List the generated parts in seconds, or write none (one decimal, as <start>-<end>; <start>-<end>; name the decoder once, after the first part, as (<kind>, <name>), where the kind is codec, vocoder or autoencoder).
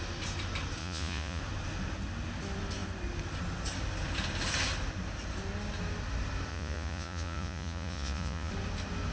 0.8-1.4 (vocoder, Vocos); 6.5-8.5